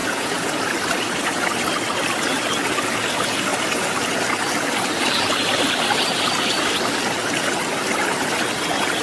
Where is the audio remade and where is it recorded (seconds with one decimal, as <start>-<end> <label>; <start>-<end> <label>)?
0.0-0.6 remade; 0.6-9.0 recorded